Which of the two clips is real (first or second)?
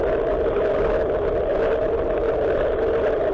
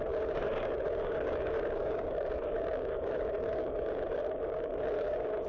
first